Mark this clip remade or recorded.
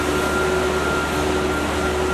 recorded